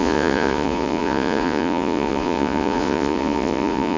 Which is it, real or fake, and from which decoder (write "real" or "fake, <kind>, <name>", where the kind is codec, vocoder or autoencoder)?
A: fake, vocoder, Vocos